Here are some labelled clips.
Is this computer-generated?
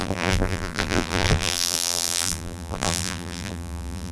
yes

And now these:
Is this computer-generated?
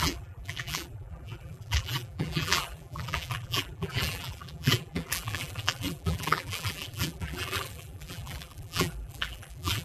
yes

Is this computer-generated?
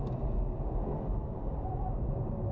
yes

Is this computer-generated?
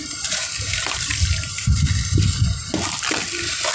no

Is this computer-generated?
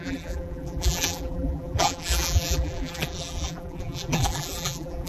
yes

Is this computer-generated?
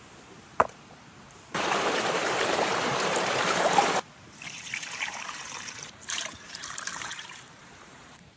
yes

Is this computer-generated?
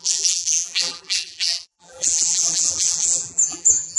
yes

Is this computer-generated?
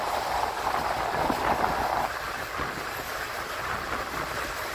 no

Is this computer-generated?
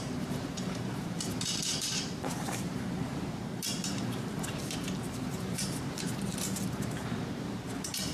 yes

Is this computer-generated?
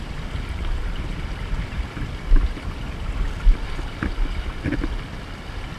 no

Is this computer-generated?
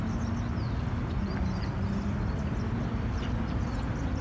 no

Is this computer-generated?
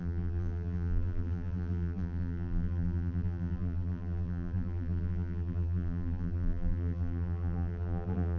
yes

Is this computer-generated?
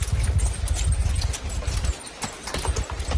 no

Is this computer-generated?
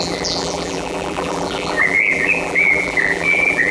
yes